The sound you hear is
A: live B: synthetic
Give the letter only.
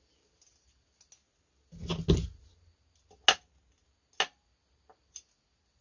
A